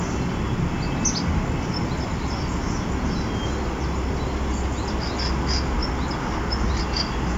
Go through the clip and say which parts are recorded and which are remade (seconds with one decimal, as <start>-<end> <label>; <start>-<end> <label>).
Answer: 0.0-7.4 recorded

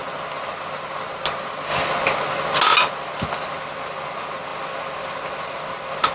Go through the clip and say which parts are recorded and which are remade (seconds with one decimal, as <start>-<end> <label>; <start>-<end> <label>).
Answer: 0.0-6.1 recorded

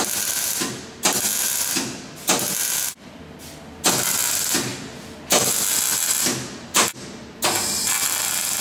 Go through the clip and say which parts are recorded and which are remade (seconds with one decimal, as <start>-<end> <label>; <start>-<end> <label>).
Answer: 0.0-8.6 recorded

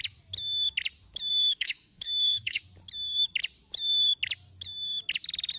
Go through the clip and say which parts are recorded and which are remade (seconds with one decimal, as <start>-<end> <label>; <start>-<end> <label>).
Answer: 0.0-1.3 recorded; 1.3-2.6 remade; 2.6-5.6 recorded

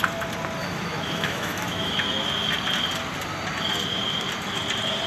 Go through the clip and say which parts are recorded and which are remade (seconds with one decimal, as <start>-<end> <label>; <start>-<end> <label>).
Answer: 0.0-0.6 recorded; 0.6-2.0 remade; 2.0-5.1 recorded

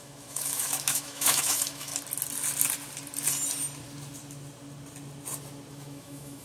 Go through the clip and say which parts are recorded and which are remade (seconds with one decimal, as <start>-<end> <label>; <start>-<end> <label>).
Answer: 0.0-1.9 remade; 1.9-5.7 recorded; 5.7-6.4 remade

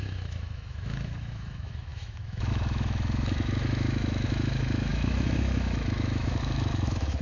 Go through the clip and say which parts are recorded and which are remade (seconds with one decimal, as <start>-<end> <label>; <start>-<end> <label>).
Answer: 0.0-7.2 remade

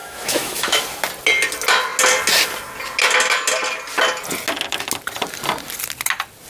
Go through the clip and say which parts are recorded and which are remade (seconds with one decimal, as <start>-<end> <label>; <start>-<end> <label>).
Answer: 0.0-0.8 remade; 0.8-6.5 recorded